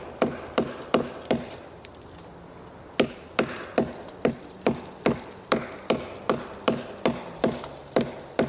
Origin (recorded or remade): recorded